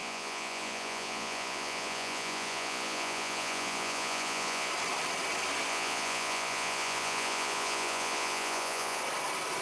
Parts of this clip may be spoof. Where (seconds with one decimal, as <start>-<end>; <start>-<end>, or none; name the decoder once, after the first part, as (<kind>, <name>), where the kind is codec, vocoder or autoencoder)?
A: 0.0-4.7 (vocoder, Vocos); 5.7-9.0